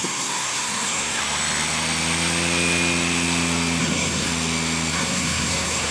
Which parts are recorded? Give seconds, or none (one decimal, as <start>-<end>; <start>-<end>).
1.2-3.8; 4.3-4.9